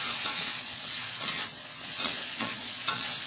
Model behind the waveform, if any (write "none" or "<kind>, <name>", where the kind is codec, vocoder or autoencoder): vocoder, Vocos